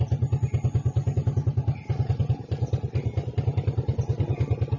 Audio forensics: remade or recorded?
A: recorded